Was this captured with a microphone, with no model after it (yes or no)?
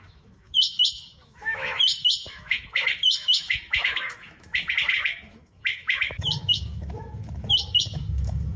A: no